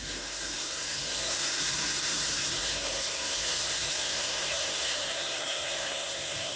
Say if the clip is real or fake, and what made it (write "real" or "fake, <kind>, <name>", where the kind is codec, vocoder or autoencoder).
fake, codec, SNAC